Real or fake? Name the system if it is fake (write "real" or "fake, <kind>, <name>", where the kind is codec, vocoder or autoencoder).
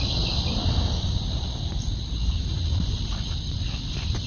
real